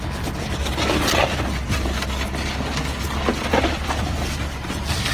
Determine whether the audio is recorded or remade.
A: recorded